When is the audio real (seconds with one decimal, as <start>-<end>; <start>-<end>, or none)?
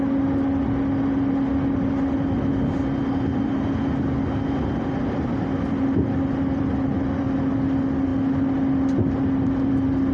0.0-10.1